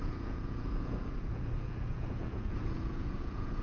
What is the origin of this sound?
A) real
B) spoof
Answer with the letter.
B